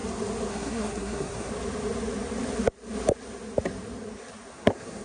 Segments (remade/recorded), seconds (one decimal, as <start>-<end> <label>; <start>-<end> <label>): 0.0-0.5 recorded; 0.5-1.5 remade; 1.5-4.5 recorded; 4.5-5.0 remade